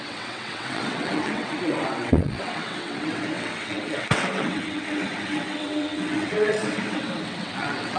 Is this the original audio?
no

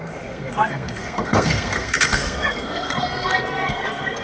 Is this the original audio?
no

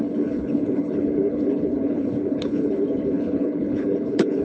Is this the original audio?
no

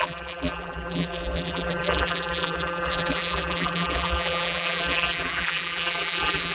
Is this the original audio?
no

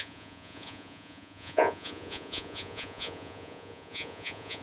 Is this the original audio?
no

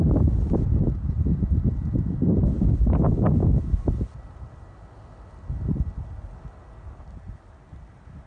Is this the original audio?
yes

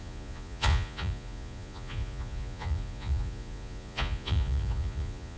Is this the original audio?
no